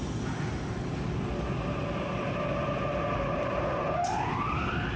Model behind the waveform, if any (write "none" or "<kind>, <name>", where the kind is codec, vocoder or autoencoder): none